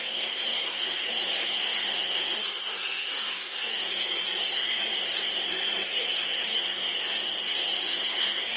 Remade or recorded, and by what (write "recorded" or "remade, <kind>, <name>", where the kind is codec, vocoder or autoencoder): remade, codec, SNAC